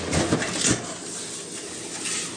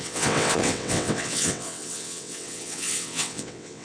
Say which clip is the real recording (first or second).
first